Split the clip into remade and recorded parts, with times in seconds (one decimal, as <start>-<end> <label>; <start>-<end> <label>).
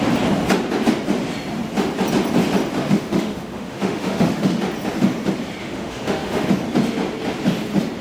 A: 0.0-2.8 recorded; 2.8-4.6 remade; 4.6-5.6 recorded; 5.6-6.5 remade; 6.5-8.0 recorded